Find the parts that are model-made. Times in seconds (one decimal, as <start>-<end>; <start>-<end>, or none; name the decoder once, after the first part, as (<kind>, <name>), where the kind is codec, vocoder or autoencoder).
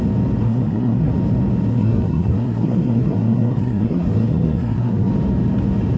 0.4-1.1 (codec, SNAC); 1.7-5.1